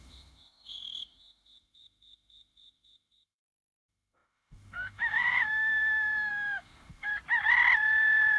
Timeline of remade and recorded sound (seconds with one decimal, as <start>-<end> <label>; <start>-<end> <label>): 0.0-7.1 remade; 7.1-8.4 recorded